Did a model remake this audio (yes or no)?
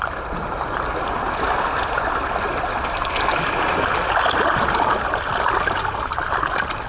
no